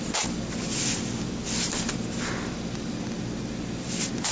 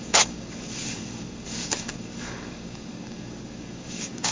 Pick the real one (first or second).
first